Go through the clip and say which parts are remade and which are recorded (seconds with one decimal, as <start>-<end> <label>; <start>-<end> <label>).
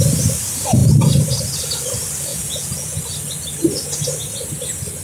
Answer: 0.0-2.3 recorded; 2.3-3.0 remade; 3.0-5.0 recorded